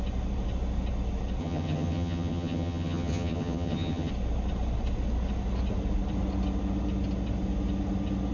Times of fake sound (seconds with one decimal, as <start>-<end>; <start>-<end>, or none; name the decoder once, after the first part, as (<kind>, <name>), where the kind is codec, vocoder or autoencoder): 1.4-4.1 (vocoder, HiFi-GAN)